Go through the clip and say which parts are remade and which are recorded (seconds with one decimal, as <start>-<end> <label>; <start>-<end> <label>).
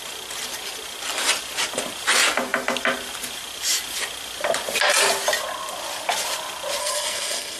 0.0-6.8 recorded; 6.8-7.6 remade